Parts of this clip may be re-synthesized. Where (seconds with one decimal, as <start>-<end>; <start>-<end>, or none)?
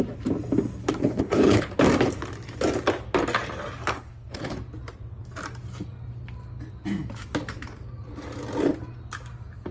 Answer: 0.8-1.7; 3.9-4.5